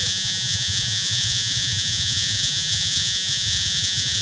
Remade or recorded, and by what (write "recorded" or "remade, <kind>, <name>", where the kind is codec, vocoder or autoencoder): remade, vocoder, Vocos